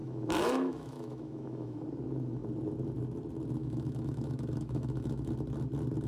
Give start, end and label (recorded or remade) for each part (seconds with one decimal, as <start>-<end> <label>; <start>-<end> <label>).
0.0-1.8 remade; 1.8-3.6 recorded; 3.6-5.3 remade; 5.3-6.1 recorded